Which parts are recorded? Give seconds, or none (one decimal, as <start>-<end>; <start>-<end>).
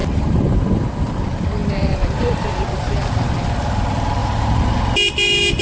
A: 0.8-1.6; 2.5-4.2; 4.8-5.6